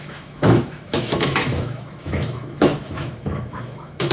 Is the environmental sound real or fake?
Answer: fake